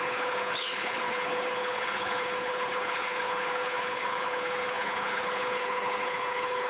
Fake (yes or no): yes